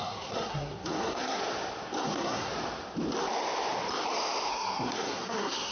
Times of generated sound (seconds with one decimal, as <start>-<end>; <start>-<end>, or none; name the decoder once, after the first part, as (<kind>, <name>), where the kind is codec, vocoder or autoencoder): 0.0-1.4 (codec, SNAC); 2.0-2.5; 4.5-5.7